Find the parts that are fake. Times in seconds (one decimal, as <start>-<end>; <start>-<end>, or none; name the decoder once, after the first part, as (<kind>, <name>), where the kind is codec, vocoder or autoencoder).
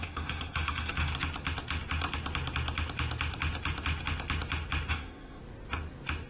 0.0-1.1 (autoencoder, DAC-VAE); 4.9-5.4